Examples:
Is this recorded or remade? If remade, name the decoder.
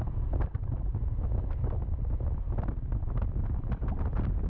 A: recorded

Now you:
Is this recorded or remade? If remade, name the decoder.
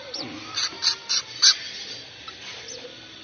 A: recorded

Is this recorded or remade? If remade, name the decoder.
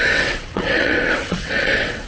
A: remade, vocoder, WaveNeXt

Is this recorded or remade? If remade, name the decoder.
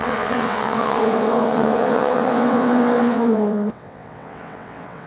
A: remade, vocoder, WaveNeXt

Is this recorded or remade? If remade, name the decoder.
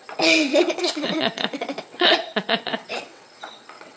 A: remade, vocoder, WaveNeXt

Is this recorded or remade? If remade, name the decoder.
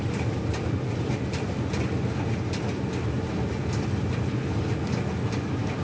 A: recorded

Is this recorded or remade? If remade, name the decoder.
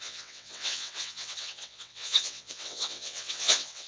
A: remade, vocoder, WaveNeXt